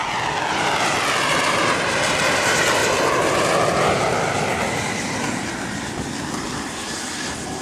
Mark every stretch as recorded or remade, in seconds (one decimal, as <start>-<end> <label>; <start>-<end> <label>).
0.0-1.8 recorded; 1.8-2.8 remade; 2.8-3.8 recorded; 3.8-7.6 remade